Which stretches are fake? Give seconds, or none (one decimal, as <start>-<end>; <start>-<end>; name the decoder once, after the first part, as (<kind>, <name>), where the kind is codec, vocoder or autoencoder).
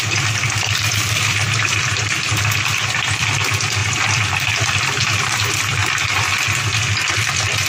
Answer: 0.0-3.8 (vocoder, BigVGAN v2); 5.0-5.8; 7.3-7.7